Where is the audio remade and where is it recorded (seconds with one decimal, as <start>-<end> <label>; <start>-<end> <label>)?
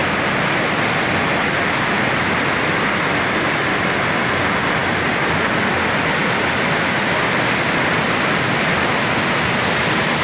0.0-10.2 recorded